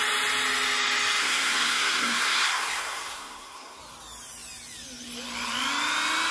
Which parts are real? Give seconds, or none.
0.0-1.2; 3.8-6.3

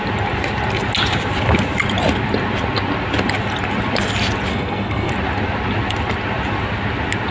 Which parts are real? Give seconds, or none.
0.0-4.5; 5.1-7.3

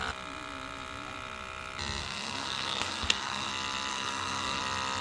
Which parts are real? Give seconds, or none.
0.0-2.0; 3.5-3.9; 4.6-5.0

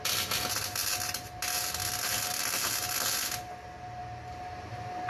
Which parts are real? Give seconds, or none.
0.0-5.1

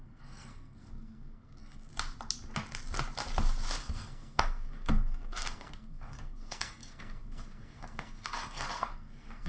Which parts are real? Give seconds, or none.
1.9-3.8

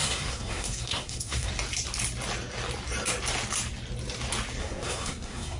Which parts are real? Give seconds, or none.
1.5-4.6

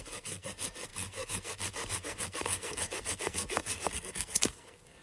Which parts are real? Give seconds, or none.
none

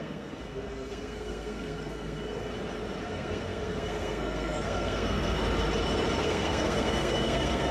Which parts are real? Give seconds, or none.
2.5-3.0; 5.4-6.2